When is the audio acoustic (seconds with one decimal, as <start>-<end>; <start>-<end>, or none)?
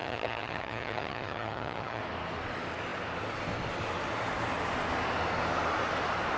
2.0-6.4